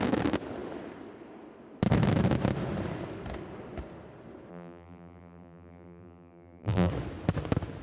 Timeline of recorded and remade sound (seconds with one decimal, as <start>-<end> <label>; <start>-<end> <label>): 0.0-4.5 recorded; 4.5-6.9 remade; 6.9-7.8 recorded